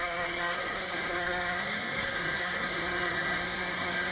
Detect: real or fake fake